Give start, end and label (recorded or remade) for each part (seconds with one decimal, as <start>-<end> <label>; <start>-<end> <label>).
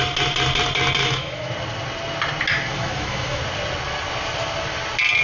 0.0-1.0 recorded; 1.0-1.5 remade; 1.5-2.7 recorded; 2.7-3.4 remade; 3.4-5.2 recorded